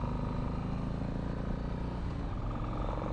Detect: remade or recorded recorded